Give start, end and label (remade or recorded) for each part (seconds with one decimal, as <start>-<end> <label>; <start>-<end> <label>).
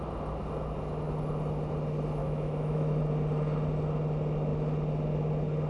0.0-2.2 recorded; 2.2-3.0 remade; 3.0-5.7 recorded